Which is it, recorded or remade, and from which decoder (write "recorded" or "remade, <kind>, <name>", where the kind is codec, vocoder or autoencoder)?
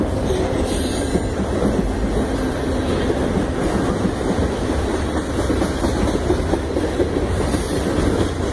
recorded